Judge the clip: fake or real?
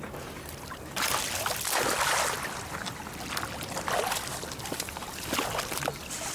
real